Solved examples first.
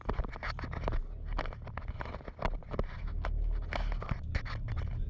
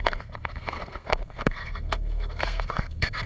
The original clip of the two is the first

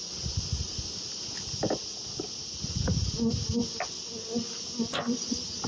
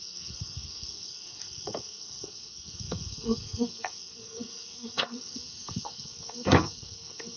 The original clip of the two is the first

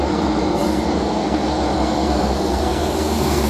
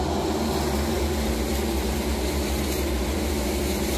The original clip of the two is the second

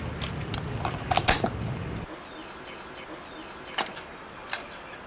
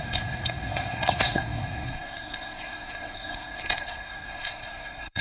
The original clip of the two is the first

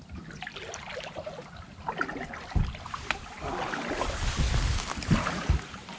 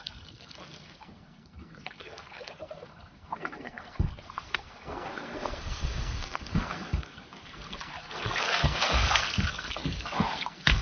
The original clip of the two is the first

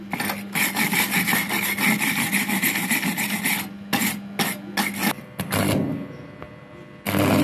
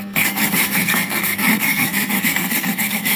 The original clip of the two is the first